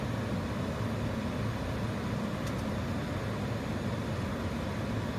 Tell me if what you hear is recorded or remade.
recorded